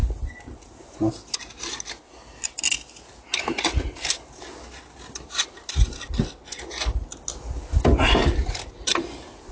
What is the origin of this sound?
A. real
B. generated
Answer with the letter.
A